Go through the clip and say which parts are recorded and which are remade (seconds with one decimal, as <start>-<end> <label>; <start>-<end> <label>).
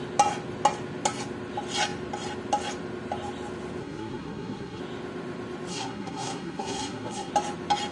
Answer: 0.0-3.8 recorded; 3.8-4.8 remade; 4.8-5.7 recorded; 5.7-7.3 remade; 7.3-7.9 recorded